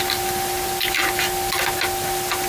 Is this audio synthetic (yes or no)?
no